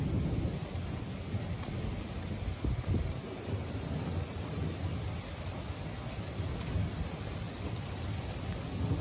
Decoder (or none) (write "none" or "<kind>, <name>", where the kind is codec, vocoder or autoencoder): none